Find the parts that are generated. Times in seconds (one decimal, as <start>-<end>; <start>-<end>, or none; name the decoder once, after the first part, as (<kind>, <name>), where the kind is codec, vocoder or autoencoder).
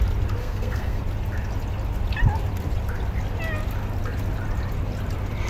0.4-1.0 (codec, SNAC)